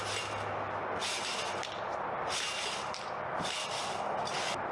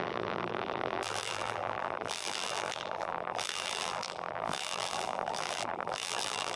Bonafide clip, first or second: first